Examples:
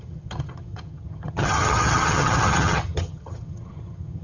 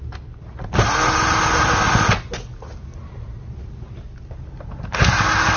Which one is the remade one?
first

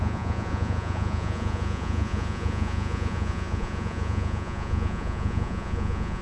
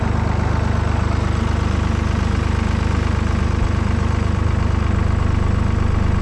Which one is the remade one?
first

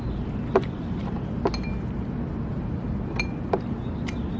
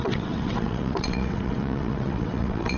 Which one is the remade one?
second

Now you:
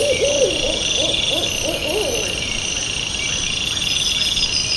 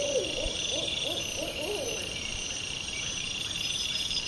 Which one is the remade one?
second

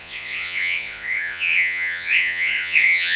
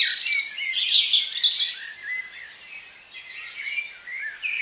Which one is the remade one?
first